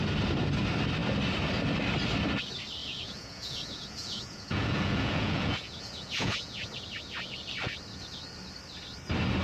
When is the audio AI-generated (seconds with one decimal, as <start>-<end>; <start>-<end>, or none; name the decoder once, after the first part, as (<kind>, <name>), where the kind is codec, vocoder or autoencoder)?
2.8-6.7 (vocoder, Vocos)